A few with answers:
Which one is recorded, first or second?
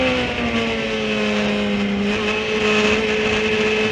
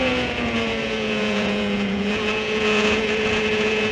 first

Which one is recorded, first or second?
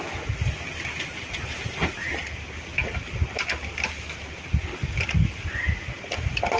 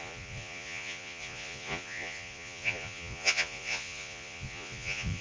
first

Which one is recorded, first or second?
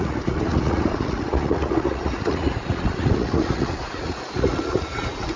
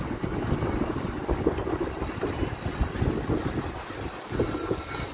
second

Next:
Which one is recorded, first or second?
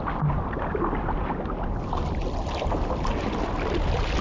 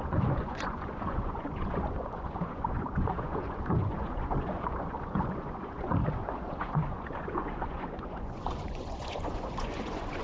first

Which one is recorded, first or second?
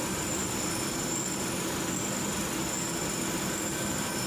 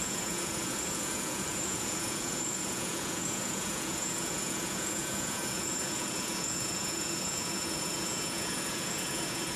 first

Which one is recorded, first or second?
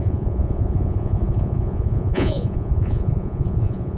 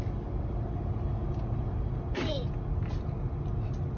second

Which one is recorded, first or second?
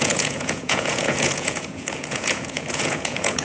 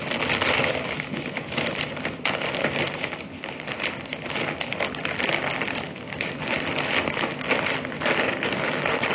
second